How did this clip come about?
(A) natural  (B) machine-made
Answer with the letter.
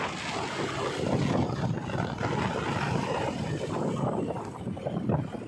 A